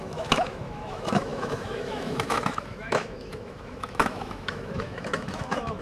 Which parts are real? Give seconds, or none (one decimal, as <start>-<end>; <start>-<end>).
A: none